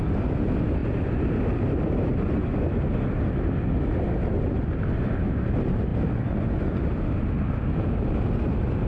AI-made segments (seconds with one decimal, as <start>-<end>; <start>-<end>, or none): none